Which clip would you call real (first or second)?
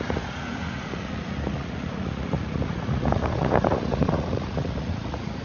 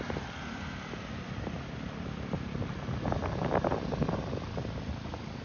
second